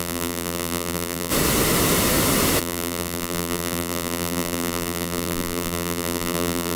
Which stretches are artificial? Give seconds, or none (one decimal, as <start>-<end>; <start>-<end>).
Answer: 0.0-1.3; 2.6-6.8